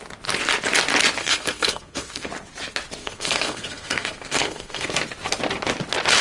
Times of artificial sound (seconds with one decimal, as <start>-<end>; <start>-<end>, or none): 1.2-2.3; 3.0-4.9